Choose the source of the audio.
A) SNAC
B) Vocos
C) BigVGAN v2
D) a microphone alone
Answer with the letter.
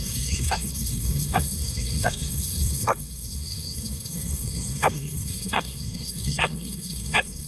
A